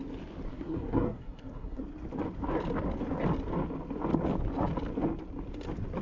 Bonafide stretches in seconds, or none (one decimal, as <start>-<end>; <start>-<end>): 0.0-0.5; 1.8-6.0